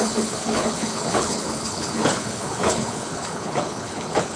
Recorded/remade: remade